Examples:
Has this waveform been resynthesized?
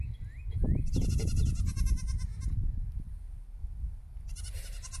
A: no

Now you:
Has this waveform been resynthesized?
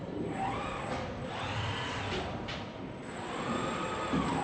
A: yes